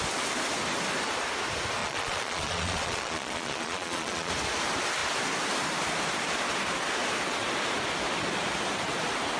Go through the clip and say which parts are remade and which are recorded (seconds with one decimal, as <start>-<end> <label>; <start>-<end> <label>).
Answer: 0.0-1.8 recorded; 1.8-4.3 remade; 4.3-9.4 recorded

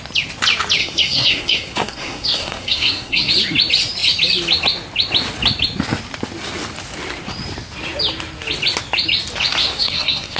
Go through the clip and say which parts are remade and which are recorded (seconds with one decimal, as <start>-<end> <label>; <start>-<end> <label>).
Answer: 0.0-0.8 recorded; 0.8-3.3 remade; 3.3-9.6 recorded; 9.6-10.4 remade